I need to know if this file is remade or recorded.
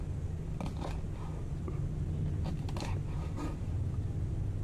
recorded